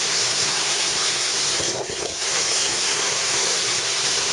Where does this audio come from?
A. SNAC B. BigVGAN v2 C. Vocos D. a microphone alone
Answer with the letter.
A